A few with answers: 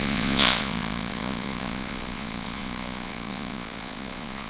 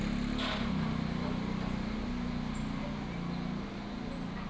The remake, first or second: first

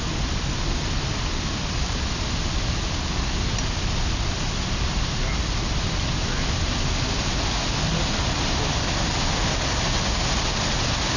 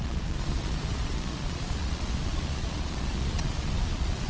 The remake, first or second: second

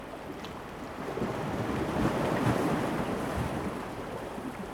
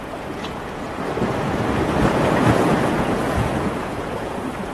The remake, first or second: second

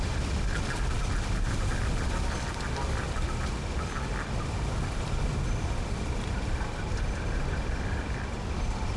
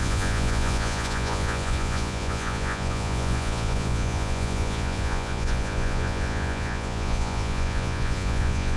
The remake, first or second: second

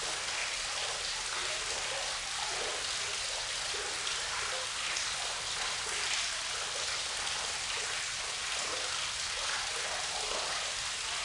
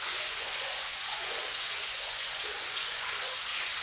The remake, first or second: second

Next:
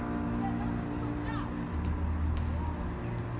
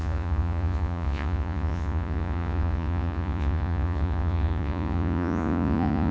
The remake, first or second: second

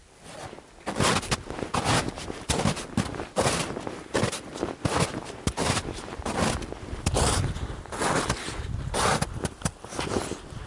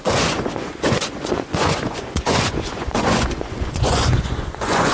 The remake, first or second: second